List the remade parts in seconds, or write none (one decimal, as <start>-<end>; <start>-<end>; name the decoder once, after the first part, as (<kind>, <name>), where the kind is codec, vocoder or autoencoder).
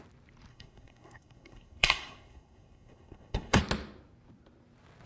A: 0.5-3.6 (codec, SNAC)